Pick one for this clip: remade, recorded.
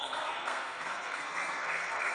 remade